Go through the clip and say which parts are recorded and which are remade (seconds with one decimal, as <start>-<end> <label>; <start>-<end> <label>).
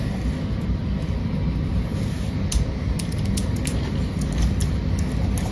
0.0-5.5 recorded